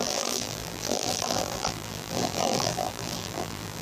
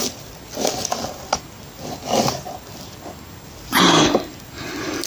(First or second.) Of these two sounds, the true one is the second